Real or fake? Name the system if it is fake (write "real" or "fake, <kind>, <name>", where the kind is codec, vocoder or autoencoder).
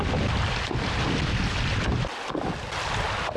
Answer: real